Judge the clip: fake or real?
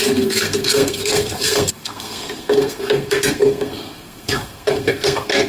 fake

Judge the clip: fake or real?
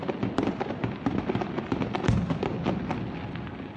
real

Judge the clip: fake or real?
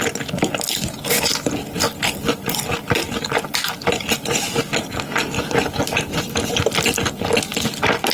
real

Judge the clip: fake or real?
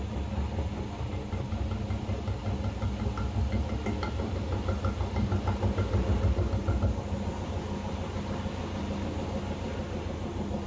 real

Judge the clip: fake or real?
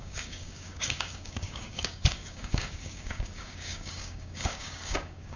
fake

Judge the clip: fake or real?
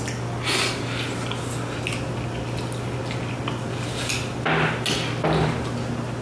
real